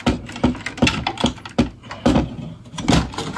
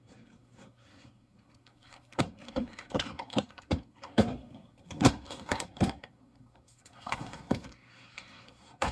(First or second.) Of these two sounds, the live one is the first